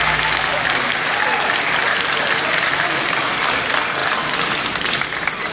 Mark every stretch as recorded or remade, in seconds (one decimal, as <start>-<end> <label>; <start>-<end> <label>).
0.0-0.5 recorded; 0.5-1.2 remade; 1.2-5.5 recorded